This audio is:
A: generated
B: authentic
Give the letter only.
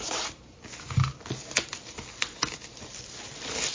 B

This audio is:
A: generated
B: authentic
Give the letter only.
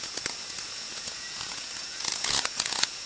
A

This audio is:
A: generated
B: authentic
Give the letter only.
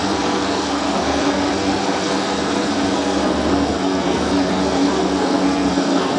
A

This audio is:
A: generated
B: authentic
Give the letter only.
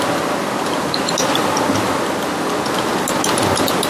B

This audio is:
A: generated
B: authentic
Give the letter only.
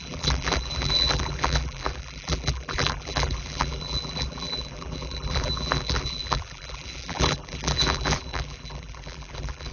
A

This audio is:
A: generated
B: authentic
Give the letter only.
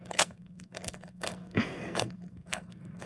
A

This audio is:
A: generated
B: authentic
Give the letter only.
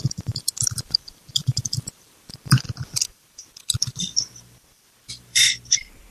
A